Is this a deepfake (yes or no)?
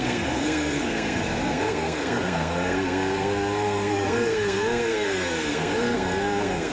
yes